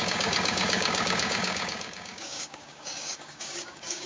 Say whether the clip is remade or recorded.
remade